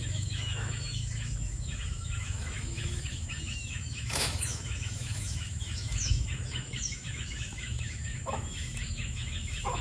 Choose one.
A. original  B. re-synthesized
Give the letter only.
B